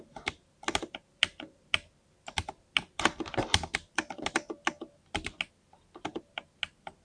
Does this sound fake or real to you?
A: real